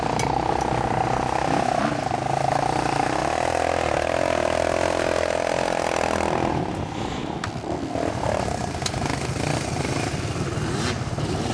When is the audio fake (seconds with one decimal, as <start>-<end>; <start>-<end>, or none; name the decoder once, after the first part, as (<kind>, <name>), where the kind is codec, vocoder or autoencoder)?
none